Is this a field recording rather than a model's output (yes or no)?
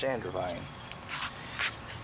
yes